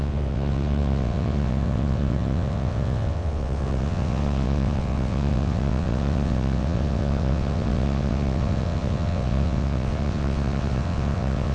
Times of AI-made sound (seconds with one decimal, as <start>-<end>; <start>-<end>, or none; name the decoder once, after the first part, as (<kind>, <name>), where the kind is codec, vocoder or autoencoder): 0.0-11.5 (vocoder, WaveNeXt)